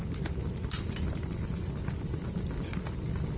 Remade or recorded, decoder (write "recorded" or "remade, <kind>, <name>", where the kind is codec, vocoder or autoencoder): recorded